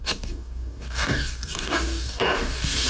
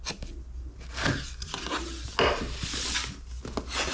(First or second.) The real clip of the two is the second